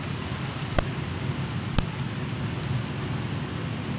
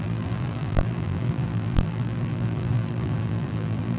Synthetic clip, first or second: second